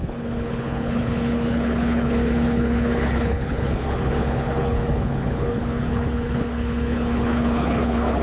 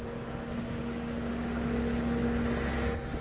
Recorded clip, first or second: second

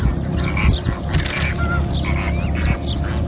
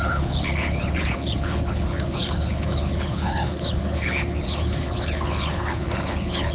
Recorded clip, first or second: first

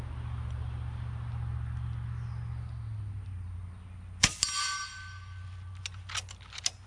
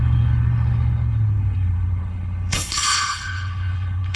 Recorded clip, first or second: first